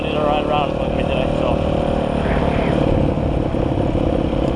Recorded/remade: recorded